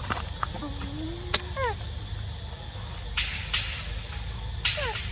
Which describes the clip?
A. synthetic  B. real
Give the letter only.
B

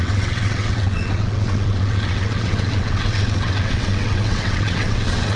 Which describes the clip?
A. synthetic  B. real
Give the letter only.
A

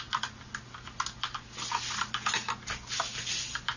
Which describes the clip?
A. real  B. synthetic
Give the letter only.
A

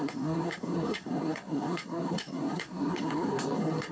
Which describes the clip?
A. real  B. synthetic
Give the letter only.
B